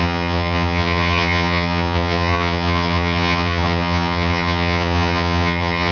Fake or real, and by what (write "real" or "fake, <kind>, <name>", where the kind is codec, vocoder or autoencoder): fake, vocoder, HiFi-GAN